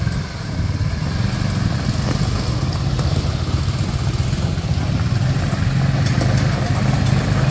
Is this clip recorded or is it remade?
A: recorded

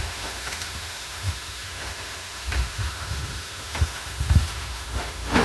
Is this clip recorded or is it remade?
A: remade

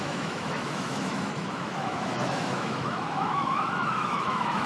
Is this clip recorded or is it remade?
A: remade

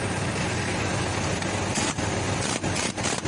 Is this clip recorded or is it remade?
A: recorded